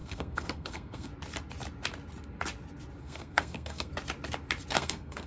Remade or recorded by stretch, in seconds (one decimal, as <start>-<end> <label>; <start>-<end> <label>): 0.0-1.1 remade; 1.1-3.0 recorded; 3.0-3.9 remade; 3.9-4.7 recorded; 4.7-5.3 remade